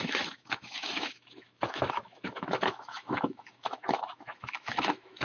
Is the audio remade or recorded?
remade